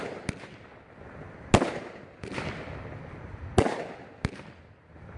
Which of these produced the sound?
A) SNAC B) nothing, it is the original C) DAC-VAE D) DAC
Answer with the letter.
B